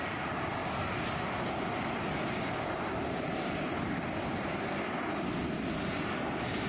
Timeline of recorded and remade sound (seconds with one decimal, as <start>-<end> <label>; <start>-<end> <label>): 0.0-2.2 recorded; 2.2-6.1 remade; 6.1-6.7 recorded